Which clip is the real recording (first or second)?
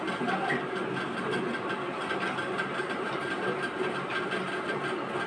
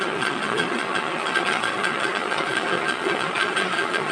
first